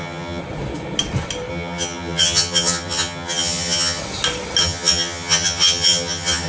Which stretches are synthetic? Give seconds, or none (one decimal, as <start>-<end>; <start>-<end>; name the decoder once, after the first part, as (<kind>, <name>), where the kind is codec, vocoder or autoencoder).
0.0-0.4 (vocoder, HiFi-GAN); 1.5-4.0; 4.6-6.5